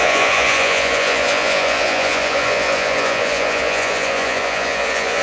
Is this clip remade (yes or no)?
yes